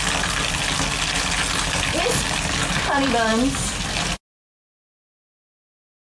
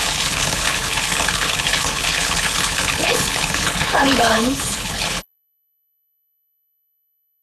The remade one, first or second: second